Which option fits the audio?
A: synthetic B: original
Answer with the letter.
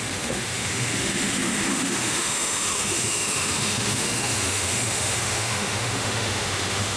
A